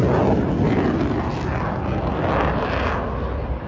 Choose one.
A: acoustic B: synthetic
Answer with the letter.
A